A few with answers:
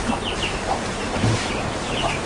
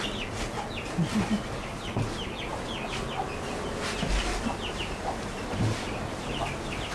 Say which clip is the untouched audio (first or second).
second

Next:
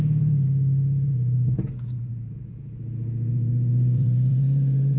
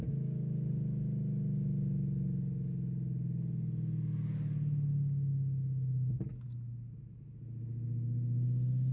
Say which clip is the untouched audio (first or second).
second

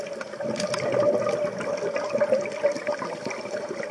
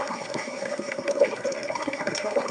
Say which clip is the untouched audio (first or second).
first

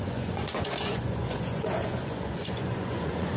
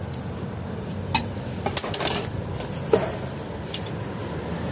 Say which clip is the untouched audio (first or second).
second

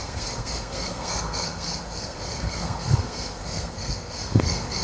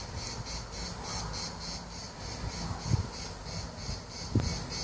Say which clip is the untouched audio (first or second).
second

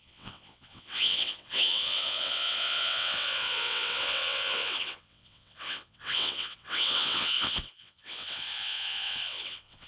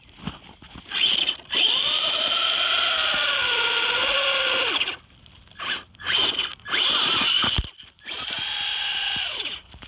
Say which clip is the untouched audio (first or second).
second